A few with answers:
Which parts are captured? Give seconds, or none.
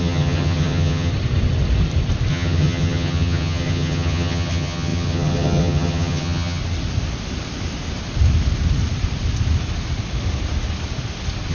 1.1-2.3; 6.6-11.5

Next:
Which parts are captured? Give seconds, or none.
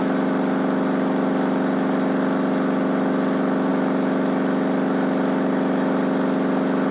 0.0-6.9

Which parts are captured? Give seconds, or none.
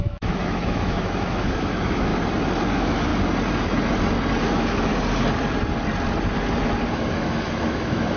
2.1-2.6; 3.1-4.4; 4.9-6.9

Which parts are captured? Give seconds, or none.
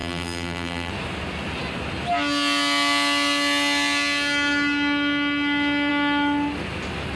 0.9-7.2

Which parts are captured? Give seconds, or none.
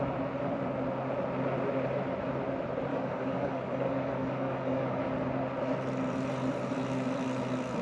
0.0-2.9; 5.0-7.8